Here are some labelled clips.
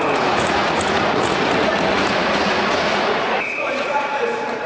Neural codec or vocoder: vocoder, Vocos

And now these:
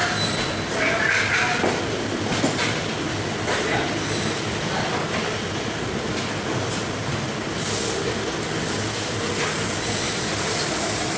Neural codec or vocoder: none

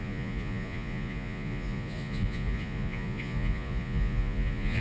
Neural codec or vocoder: vocoder, Vocos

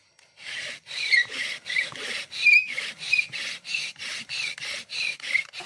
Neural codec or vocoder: none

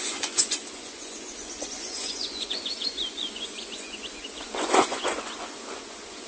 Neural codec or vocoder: vocoder, Vocos